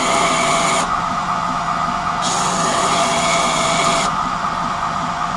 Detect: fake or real fake